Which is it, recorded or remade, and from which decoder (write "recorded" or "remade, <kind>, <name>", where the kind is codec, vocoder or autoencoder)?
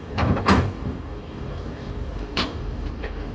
remade, codec, DAC